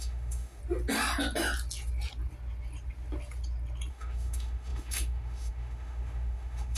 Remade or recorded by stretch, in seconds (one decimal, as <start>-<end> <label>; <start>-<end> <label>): 0.0-0.6 remade; 0.6-3.9 recorded; 3.9-6.8 remade